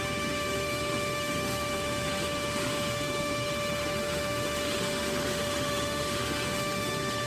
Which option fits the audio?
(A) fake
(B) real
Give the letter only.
A